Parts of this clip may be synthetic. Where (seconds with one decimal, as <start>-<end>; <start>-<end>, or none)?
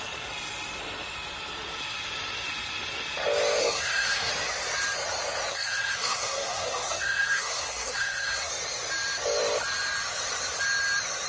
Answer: 3.6-4.3; 5.5-8.5